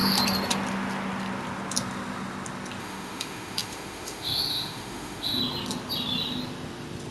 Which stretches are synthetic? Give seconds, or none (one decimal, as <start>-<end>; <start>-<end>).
2.8-5.4